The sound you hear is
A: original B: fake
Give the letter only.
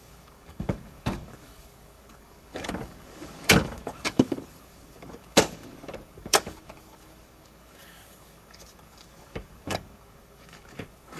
B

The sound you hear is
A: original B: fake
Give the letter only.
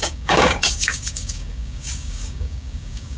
B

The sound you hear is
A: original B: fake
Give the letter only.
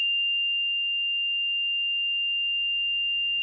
A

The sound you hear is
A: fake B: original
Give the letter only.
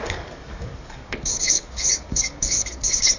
A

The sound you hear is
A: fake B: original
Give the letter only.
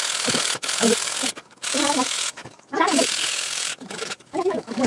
A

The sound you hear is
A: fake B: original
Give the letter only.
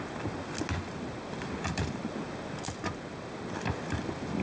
B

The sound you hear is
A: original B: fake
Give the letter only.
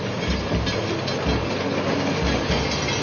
A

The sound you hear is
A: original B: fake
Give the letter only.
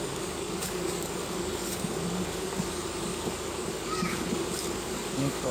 B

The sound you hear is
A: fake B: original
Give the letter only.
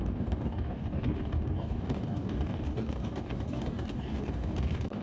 A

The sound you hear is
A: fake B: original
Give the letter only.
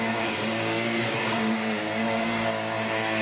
A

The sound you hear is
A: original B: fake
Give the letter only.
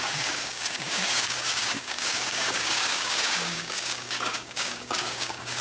B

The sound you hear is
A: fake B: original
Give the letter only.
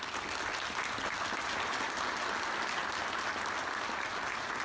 B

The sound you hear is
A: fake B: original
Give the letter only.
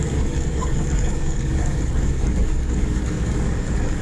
A